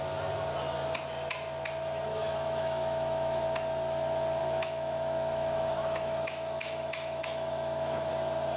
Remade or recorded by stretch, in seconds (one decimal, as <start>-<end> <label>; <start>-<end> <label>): 0.0-2.1 recorded; 2.1-3.4 remade; 3.4-4.4 recorded; 4.4-8.1 remade; 8.1-8.6 recorded